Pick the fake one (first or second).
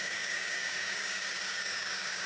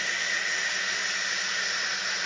first